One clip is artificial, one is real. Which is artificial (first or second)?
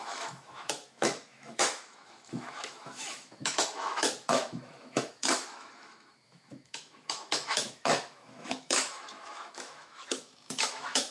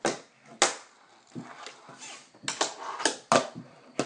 first